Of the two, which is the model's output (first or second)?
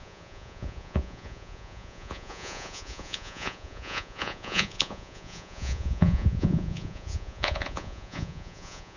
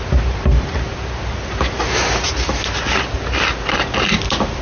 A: first